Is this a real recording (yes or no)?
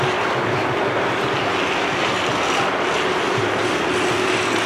yes